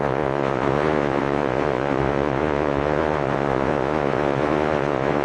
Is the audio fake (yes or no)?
yes